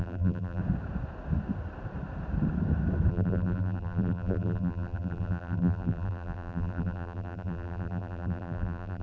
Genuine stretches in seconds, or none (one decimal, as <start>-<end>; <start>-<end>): 0.6-3.1